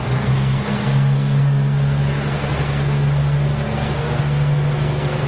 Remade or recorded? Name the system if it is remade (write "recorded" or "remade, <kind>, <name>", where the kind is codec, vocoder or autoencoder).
remade, codec, SNAC